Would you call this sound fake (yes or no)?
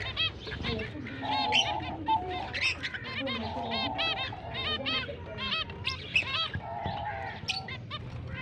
no